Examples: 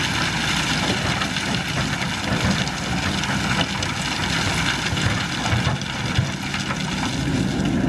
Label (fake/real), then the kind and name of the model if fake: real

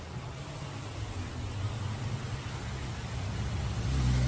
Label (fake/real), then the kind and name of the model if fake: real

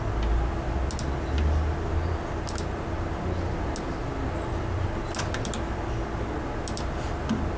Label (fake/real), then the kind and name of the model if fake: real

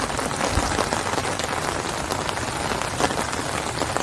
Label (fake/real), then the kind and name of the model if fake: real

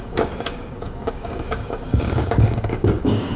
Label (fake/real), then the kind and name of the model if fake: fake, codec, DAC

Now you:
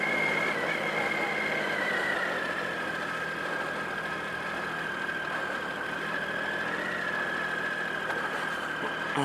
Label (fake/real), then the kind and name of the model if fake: real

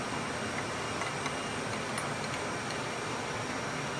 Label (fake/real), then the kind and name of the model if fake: real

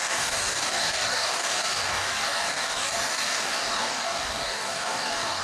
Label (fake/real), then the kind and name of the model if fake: fake, codec, DAC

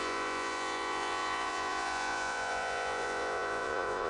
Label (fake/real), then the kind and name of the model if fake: fake, vocoder, Vocos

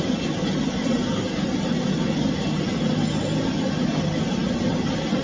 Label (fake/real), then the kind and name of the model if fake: real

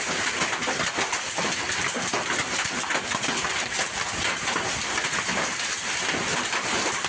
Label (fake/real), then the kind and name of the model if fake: real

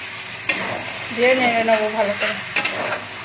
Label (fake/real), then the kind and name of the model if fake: real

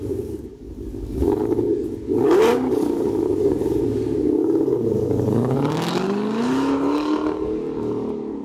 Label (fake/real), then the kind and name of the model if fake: fake, codec, DAC